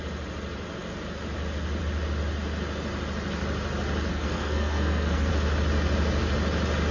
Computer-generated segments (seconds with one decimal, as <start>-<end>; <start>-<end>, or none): 4.1-5.3